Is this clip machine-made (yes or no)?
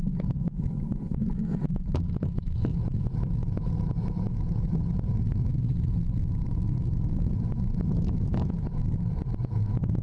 yes